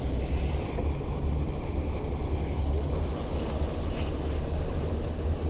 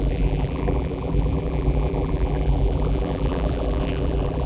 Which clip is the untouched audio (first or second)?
first